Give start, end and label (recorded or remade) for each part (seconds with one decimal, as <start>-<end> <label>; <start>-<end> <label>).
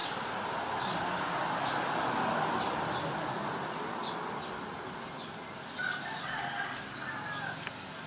0.0-2.8 remade; 2.8-4.0 recorded; 4.0-5.0 remade; 5.0-8.1 recorded